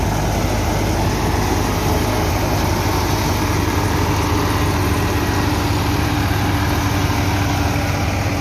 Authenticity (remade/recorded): recorded